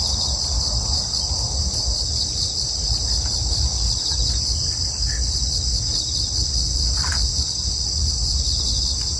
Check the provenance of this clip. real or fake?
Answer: real